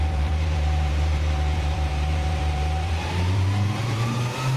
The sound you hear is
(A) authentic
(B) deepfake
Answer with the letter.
B